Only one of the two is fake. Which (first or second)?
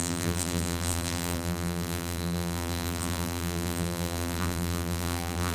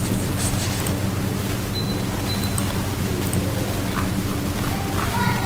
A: first